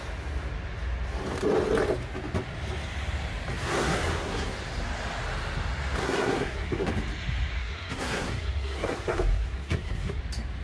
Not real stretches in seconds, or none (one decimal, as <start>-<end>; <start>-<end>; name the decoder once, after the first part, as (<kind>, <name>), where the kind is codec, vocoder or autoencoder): 3.5-4.5 (codec, SNAC); 6.0-6.9; 7.6-10.2